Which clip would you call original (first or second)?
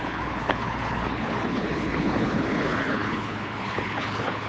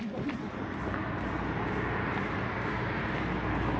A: second